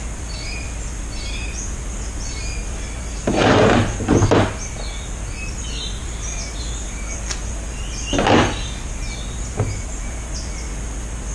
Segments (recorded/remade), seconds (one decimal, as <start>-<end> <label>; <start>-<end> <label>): 0.0-11.3 recorded